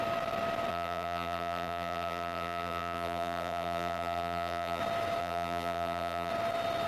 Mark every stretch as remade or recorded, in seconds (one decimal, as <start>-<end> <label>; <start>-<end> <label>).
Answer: 0.0-0.7 recorded; 0.7-4.8 remade; 4.8-5.2 recorded; 5.2-6.3 remade; 6.3-6.9 recorded

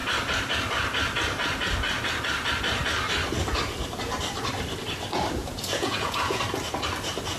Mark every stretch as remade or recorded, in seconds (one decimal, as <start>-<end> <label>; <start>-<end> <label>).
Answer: 0.0-5.4 recorded; 5.4-6.4 remade; 6.4-7.4 recorded